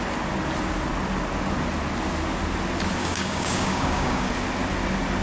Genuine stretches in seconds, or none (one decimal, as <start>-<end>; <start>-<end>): 0.0-3.0; 4.3-5.2